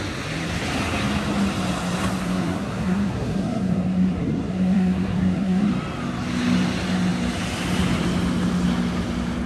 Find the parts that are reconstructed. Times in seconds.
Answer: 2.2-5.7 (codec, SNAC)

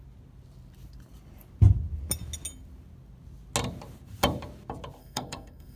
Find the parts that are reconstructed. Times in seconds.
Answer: 5.0-5.8 (codec, SNAC)

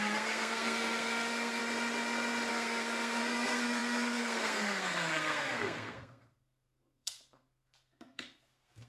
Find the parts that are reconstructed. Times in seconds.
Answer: 0.0-1.6 (codec, SNAC); 2.5-8.9